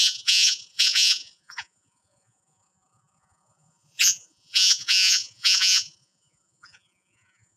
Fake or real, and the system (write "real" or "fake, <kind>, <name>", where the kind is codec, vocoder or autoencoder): fake, vocoder, Vocos